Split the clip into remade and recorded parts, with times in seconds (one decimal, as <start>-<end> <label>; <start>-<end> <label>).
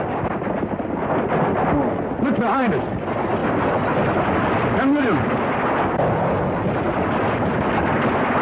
0.0-8.4 recorded